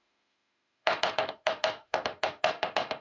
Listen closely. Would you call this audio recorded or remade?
remade